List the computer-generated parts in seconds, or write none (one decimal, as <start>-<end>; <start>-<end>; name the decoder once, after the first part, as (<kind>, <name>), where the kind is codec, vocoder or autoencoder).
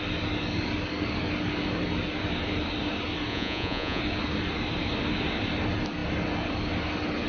3.3-4.0 (vocoder, Vocos)